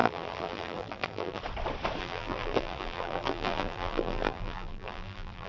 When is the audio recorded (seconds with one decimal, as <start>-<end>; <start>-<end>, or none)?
1.4-2.0